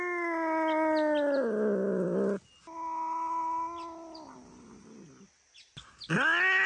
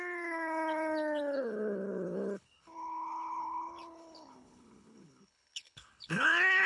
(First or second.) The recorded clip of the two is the first